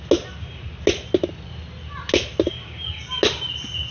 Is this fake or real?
real